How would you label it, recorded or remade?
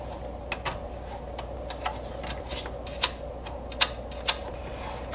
recorded